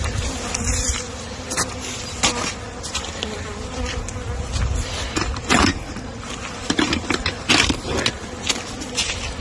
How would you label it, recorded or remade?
recorded